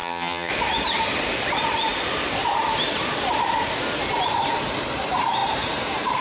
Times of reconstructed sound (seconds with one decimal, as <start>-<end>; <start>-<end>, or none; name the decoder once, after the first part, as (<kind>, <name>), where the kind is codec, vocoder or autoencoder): 0.0-0.5 (vocoder, HiFi-GAN)